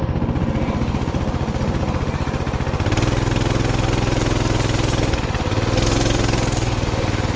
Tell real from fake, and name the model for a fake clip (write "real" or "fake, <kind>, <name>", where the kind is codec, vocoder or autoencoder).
real